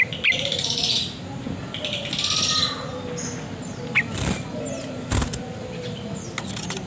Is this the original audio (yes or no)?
yes